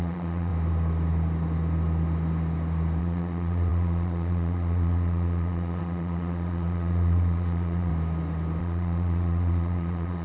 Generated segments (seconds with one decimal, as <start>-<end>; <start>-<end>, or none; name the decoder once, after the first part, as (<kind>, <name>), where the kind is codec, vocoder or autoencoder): 0.0-0.5 (vocoder, Vocos); 3.0-7.9; 8.6-10.2